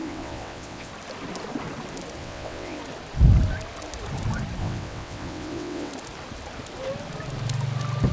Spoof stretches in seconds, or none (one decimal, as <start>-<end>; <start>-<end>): 0.0-0.9; 2.2-2.8; 4.6-5.9